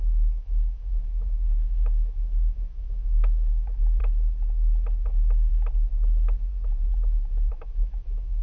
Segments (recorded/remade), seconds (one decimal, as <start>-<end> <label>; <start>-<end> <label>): 0.0-4.0 remade; 4.0-5.1 recorded; 5.1-5.5 remade; 5.5-7.5 recorded; 7.5-8.4 remade